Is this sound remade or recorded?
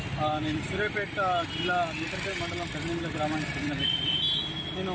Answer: recorded